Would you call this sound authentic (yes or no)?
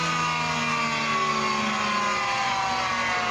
yes